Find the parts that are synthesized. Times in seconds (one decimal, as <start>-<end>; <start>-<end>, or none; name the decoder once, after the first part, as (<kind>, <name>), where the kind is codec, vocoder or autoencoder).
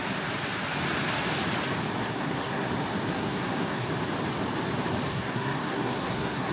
2.0-2.7 (codec, SNAC); 3.1-3.9; 5.1-6.5